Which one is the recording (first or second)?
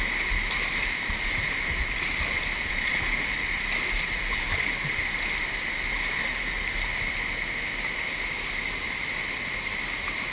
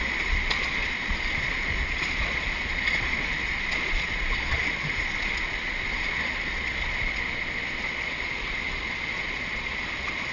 first